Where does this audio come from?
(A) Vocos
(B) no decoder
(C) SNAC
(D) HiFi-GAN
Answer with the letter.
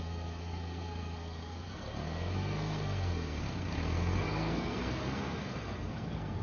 C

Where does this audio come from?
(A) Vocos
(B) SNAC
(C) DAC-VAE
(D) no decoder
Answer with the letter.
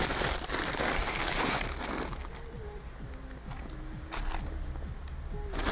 D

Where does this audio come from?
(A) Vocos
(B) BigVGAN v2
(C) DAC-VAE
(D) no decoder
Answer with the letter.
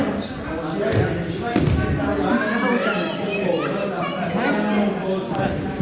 D